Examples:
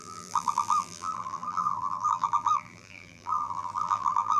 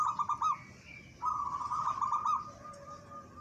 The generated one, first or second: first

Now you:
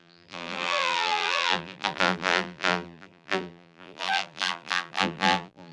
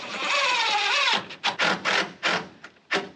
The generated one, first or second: first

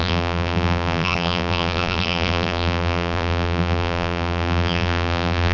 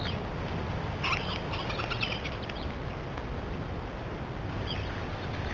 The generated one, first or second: first